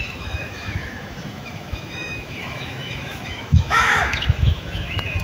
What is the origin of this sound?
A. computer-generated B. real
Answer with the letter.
A